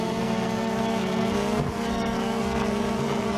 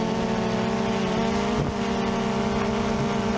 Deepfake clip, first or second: first